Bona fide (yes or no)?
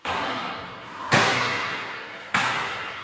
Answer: no